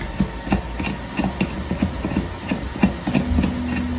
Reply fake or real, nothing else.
real